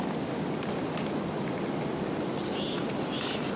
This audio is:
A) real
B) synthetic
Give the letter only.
A